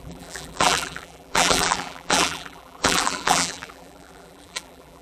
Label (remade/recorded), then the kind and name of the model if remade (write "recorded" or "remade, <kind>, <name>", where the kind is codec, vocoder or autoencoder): remade, vocoder, BigVGAN v2